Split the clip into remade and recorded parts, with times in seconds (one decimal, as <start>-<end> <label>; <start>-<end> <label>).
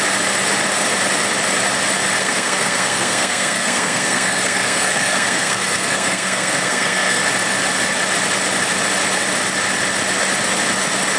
0.0-2.2 recorded; 2.2-7.2 remade; 7.2-11.2 recorded